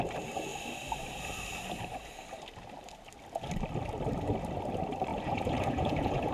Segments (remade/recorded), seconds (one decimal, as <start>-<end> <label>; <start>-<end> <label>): 0.0-5.1 recorded; 5.1-6.3 remade